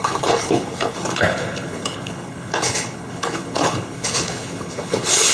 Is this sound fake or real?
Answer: fake